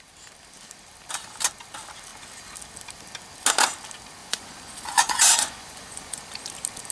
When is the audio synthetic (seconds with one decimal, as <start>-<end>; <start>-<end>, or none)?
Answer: 4.2-6.2